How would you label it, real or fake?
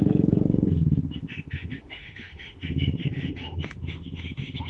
fake